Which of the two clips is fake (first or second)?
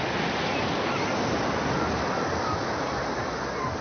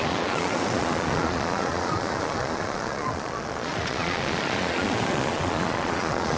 second